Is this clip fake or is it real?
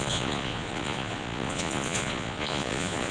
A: fake